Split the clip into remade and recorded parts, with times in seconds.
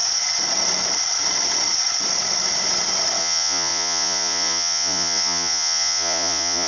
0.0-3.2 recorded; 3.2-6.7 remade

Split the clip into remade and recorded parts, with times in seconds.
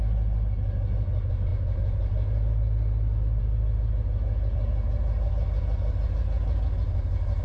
0.0-7.4 recorded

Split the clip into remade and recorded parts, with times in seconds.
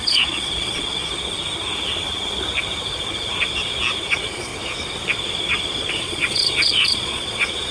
0.0-1.0 remade; 1.0-4.1 recorded; 4.1-4.5 remade; 4.5-5.9 recorded; 5.9-7.7 remade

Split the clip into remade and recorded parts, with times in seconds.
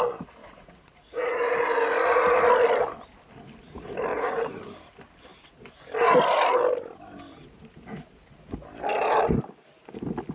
0.0-0.4 recorded; 0.4-1.4 remade; 1.4-4.1 recorded; 4.1-4.7 remade; 4.7-10.3 recorded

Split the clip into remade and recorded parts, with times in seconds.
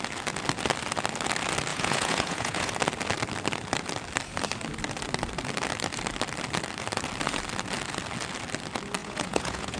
0.0-1.7 recorded; 1.7-2.7 remade; 2.7-9.0 recorded; 9.0-9.8 remade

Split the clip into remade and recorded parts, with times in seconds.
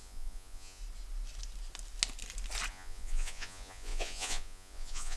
0.0-0.8 remade; 0.8-2.7 recorded; 2.7-5.2 remade